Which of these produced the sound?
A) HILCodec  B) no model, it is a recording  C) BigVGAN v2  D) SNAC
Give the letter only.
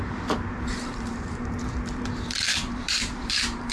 C